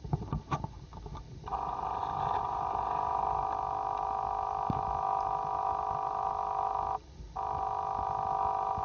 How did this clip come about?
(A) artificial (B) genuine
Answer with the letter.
B